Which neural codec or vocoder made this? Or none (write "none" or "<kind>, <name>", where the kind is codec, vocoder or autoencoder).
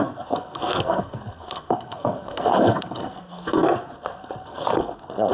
codec, SNAC